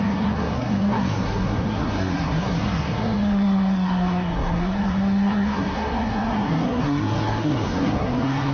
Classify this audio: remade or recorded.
remade